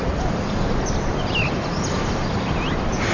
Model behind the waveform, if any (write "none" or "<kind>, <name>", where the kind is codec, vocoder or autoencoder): none